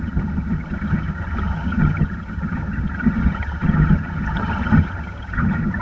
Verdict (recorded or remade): remade